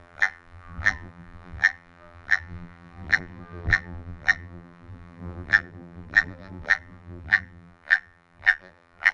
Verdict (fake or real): fake